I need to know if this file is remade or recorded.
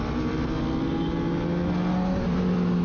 recorded